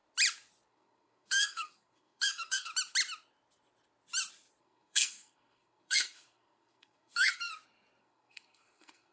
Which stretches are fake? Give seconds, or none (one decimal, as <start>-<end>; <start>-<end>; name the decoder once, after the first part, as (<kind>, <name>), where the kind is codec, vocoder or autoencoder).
0.7-2.7 (codec, SNAC); 4.6-7.5; 8.0-9.1